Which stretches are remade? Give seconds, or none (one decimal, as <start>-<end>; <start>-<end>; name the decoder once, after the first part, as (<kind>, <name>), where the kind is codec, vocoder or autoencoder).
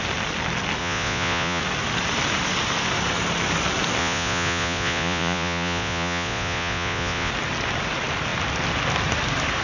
0.8-1.6 (vocoder, Vocos); 4.0-7.3